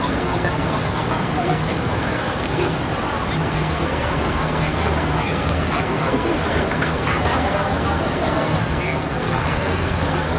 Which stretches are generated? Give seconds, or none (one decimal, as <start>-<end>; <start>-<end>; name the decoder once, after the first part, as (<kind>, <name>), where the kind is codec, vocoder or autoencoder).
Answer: 0.0-2.8 (codec, SNAC); 3.4-10.4